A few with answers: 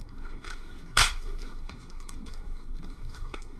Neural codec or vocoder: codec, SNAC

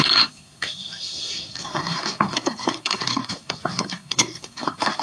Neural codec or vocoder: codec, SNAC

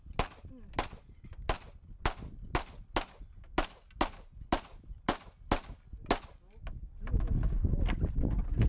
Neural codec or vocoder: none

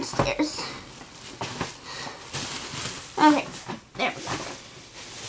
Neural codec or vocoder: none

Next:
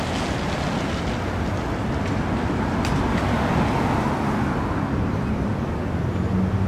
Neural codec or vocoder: none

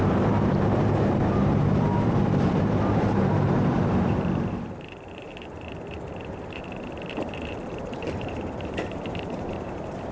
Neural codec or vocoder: vocoder, BigVGAN v2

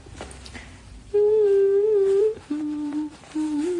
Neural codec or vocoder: vocoder, BigVGAN v2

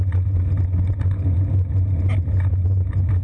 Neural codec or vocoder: none